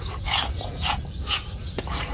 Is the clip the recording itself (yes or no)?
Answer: no